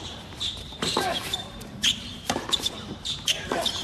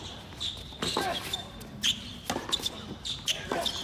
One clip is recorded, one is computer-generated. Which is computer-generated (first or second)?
first